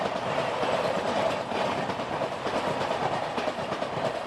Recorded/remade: recorded